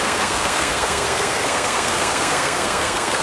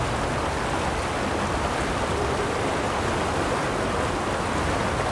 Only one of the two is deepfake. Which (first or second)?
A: first